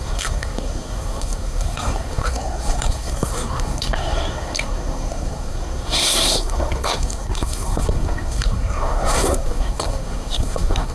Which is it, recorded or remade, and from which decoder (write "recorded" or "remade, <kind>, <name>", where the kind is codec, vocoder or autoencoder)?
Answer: remade, codec, SNAC